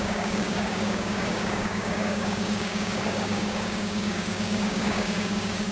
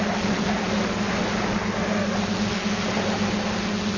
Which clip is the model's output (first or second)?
first